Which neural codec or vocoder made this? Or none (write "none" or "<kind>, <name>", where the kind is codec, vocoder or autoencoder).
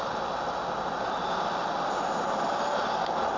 none